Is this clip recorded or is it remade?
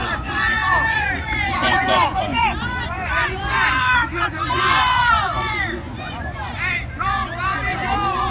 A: remade